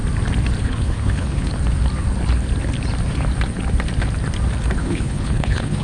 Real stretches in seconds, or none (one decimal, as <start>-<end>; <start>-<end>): 0.0-0.6; 1.5-4.8